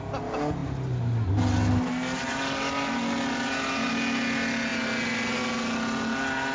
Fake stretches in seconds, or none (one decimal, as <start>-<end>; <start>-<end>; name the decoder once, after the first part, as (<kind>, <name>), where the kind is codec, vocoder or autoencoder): none